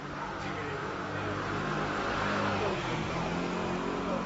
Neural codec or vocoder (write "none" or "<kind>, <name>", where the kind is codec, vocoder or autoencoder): none